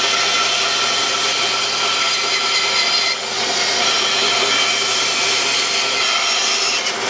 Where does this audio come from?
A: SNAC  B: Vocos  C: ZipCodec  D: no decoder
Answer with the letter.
D